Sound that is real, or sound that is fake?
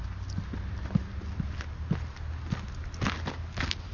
real